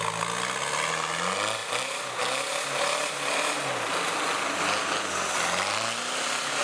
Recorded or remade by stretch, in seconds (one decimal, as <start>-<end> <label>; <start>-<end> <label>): 0.0-1.6 recorded; 1.6-3.1 remade; 3.1-6.6 recorded